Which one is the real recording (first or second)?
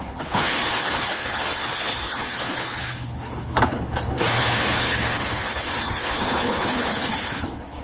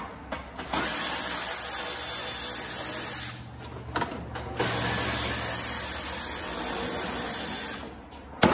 second